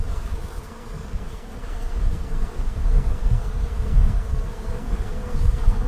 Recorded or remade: remade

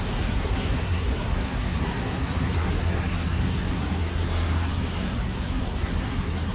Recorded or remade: remade